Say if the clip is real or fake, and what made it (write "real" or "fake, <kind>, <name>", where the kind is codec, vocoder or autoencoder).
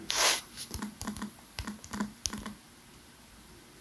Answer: real